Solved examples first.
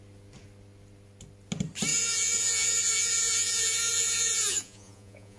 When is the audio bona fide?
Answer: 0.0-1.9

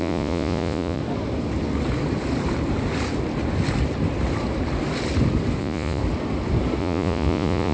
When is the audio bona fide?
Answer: 1.0-5.6; 6.0-6.8

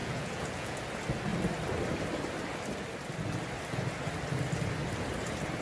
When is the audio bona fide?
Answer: 0.8-5.6

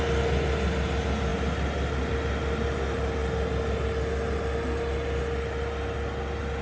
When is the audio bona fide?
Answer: 0.0-6.6

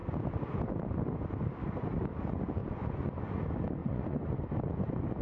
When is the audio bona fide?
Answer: 0.0-2.6; 3.4-3.8; 4.5-5.2